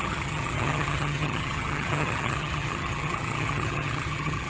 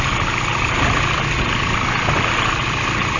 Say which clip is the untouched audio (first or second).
second